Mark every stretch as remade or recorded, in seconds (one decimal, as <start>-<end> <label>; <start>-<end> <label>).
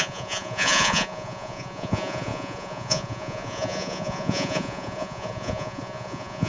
0.0-6.5 remade